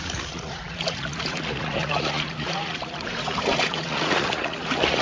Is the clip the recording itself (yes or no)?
no